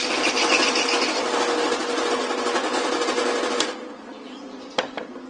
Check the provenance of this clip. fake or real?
real